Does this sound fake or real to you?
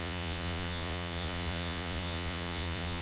fake